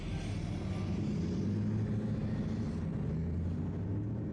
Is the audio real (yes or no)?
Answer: yes